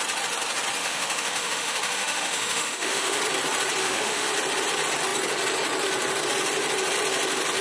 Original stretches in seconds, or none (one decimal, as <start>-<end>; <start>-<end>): 0.0-0.8; 3.2-3.8; 4.3-7.6